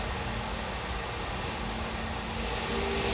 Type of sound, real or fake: real